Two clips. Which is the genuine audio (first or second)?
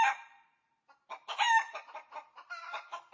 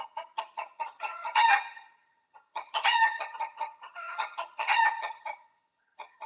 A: first